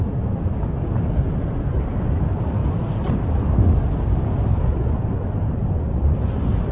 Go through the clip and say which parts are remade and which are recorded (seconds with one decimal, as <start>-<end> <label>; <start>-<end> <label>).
0.0-6.7 recorded